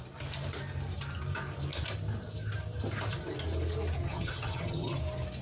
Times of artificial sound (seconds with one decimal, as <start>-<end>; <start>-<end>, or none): 4.0-5.0